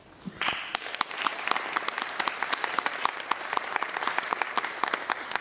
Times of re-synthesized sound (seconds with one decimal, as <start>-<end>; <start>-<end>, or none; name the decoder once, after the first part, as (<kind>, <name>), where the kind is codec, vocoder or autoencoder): 0.7-3.9 (vocoder, BigVGAN v2)

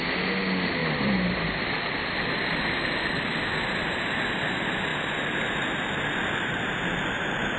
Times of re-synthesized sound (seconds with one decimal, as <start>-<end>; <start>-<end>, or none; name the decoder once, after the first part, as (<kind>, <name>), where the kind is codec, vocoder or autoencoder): 0.8-4.2 (vocoder, BigVGAN v2)